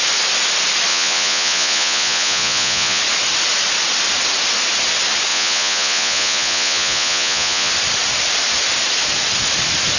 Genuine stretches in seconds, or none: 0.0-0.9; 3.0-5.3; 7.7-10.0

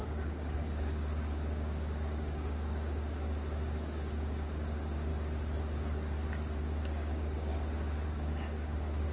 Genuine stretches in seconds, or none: 5.1-6.6; 7.5-8.1

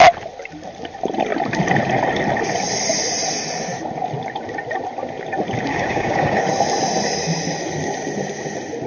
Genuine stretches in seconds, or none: 0.0-5.7; 6.4-8.9

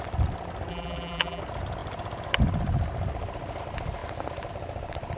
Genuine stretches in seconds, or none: 0.0-0.7; 1.4-5.2

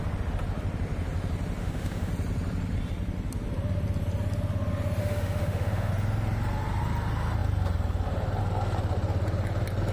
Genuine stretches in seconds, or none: 0.0-1.6; 2.1-5.0; 5.9-9.9

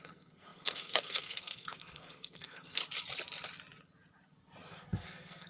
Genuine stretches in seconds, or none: 2.8-4.7

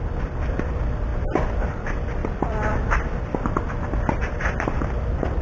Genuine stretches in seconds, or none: none

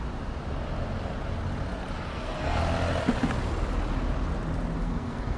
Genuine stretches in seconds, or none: 0.0-2.1; 2.6-4.8